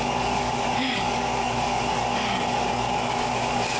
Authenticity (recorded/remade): remade